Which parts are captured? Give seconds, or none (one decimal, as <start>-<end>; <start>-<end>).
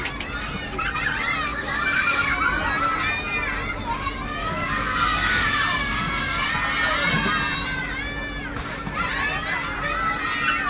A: 0.0-1.5; 2.3-4.4; 6.5-10.7